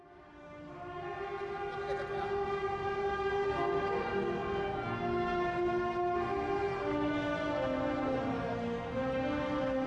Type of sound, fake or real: real